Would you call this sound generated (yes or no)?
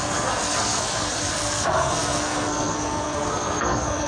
yes